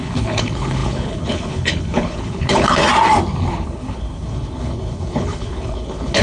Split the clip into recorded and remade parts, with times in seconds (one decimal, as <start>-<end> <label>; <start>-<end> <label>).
0.0-2.8 remade; 2.8-3.5 recorded; 3.5-6.2 remade